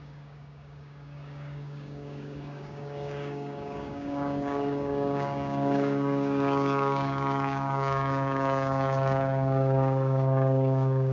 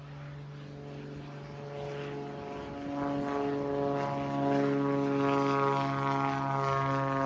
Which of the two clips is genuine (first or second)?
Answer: second